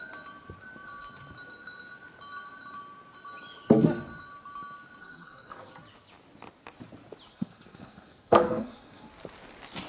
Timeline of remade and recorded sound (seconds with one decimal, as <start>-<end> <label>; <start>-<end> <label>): 0.0-5.0 recorded; 5.0-5.7 remade; 5.7-7.3 recorded; 7.3-9.1 remade; 9.1-9.9 recorded